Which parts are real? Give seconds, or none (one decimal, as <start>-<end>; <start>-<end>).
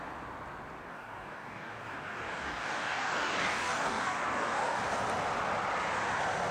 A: 0.0-0.9; 4.8-6.5